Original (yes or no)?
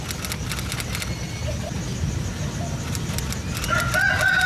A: yes